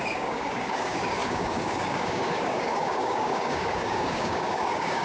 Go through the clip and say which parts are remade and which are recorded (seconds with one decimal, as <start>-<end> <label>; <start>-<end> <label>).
0.0-5.0 remade